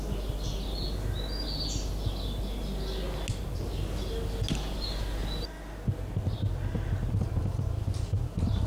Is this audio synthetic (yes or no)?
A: no